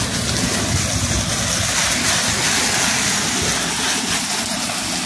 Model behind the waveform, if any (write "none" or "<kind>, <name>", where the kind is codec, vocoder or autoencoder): none